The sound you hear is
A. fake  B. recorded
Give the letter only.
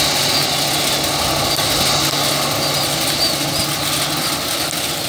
B